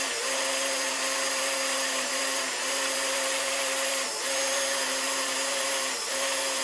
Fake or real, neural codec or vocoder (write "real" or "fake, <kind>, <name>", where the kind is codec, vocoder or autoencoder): fake, vocoder, BigVGAN v2